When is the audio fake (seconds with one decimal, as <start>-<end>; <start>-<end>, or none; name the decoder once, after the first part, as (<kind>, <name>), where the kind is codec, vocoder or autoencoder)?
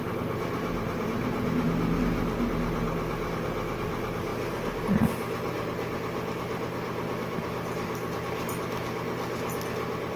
0.0-4.3 (vocoder, BigVGAN v2); 4.8-10.2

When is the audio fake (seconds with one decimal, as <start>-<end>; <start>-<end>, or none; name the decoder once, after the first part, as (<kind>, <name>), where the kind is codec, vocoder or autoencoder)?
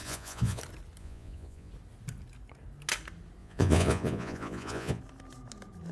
0.0-0.6 (vocoder, Vocos); 1.0-1.7; 3.4-5.0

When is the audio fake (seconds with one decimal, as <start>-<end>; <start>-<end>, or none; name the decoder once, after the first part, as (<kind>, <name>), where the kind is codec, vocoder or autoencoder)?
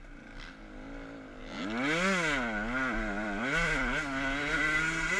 none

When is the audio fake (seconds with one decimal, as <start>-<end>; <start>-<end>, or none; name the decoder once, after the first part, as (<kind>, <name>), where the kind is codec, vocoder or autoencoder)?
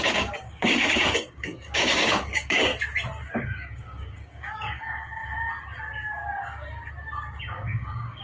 0.0-2.7 (codec, DAC); 3.3-5.2; 7.4-8.2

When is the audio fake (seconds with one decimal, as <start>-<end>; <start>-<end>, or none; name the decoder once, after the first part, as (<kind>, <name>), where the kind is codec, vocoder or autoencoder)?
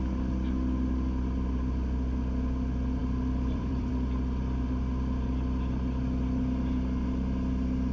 3.0-3.9 (vocoder, BigVGAN v2)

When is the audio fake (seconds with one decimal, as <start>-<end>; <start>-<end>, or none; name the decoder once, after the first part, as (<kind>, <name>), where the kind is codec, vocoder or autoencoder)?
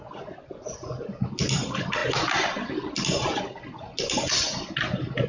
none